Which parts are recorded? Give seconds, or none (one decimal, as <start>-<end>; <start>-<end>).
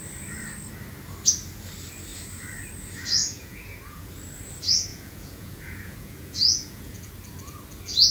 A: 0.0-3.2; 4.1-4.9; 7.1-8.1